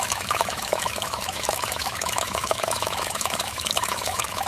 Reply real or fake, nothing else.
fake